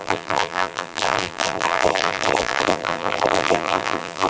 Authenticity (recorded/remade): remade